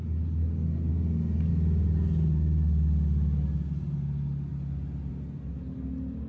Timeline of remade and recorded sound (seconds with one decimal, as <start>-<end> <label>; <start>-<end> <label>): 0.0-6.3 recorded

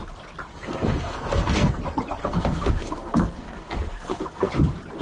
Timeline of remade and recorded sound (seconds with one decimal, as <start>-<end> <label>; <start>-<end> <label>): 0.0-0.5 recorded; 0.5-1.8 remade; 1.8-2.2 recorded; 2.2-4.5 remade; 4.5-5.0 recorded

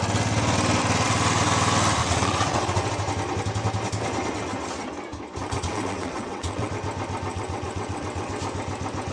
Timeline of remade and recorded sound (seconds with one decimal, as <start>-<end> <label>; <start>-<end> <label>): 0.0-2.0 recorded; 2.0-2.9 remade; 2.9-5.4 recorded; 5.4-6.7 remade; 6.7-7.3 recorded; 7.3-8.3 remade; 8.3-9.1 recorded

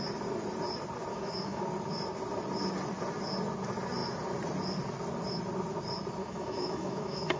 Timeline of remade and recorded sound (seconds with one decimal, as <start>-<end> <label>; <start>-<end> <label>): 0.0-1.1 recorded; 1.1-1.6 remade; 1.6-6.2 recorded; 6.2-7.4 remade